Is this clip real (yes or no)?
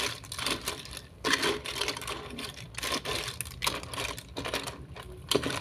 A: yes